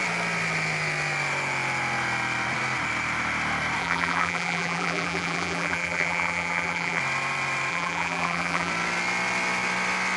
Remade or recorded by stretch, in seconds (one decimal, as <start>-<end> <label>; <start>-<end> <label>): 0.0-3.8 recorded; 3.8-7.0 remade; 7.0-7.7 recorded; 7.7-8.7 remade; 8.7-10.2 recorded

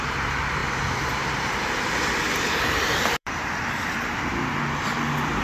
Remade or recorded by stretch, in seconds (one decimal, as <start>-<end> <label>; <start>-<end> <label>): 0.0-4.3 remade; 4.3-4.8 recorded; 4.8-5.4 remade

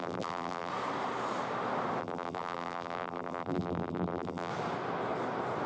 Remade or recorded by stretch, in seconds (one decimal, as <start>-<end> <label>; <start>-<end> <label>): 0.0-0.7 remade; 0.7-2.0 recorded; 2.0-4.5 remade; 4.5-5.7 recorded

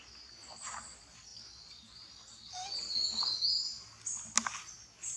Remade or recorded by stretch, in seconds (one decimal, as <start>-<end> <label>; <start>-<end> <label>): 0.0-1.3 recorded; 1.3-3.3 remade; 3.3-5.2 recorded

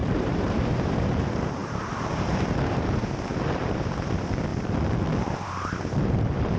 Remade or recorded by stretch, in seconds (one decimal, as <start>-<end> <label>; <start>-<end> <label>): 0.0-4.5 remade; 4.5-5.2 recorded; 5.2-6.6 remade